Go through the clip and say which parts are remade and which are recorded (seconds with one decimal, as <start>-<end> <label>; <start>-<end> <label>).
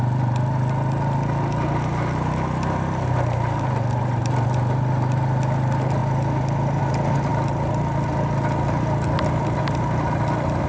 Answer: 0.0-10.7 recorded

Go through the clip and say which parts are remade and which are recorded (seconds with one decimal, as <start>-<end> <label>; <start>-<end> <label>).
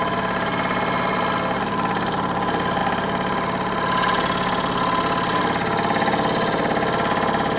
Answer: 0.0-7.6 recorded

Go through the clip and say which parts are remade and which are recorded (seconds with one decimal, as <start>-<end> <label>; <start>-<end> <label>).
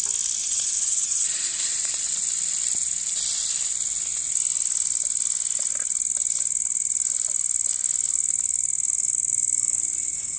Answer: 0.0-0.4 recorded; 0.4-2.1 remade; 2.1-10.4 recorded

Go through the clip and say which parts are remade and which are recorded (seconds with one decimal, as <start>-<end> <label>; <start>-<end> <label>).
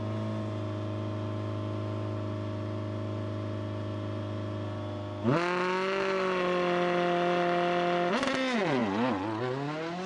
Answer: 0.0-10.1 recorded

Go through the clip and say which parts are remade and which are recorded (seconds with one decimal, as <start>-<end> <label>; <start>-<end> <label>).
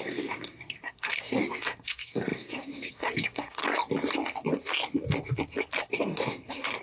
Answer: 0.0-3.6 remade; 3.6-5.8 recorded; 5.8-6.8 remade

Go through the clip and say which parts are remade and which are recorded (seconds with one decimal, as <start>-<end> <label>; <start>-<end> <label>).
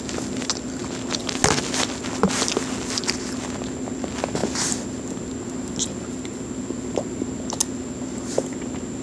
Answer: 0.0-9.0 recorded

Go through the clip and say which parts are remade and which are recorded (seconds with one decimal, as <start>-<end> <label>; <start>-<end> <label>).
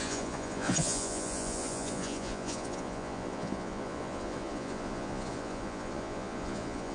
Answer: 0.0-6.9 remade